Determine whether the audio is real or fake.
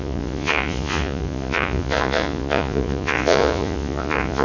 fake